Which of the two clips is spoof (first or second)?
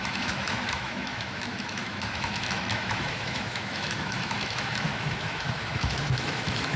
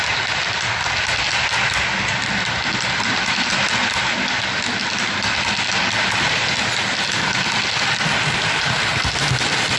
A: first